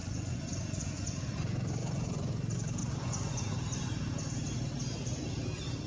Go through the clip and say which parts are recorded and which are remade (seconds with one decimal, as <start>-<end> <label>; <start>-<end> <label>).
0.0-1.3 remade; 1.3-1.8 recorded; 1.8-2.3 remade; 2.3-2.8 recorded; 2.8-3.4 remade; 3.4-5.9 recorded